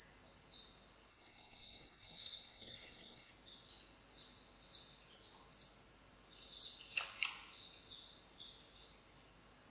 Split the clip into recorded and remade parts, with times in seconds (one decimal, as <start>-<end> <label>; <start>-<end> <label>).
0.0-1.1 recorded; 1.1-3.3 remade; 3.3-9.7 recorded